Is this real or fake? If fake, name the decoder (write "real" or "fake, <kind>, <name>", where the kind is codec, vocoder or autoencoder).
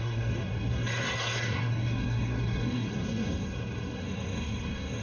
fake, codec, SNAC